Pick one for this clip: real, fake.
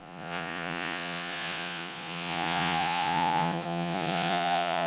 fake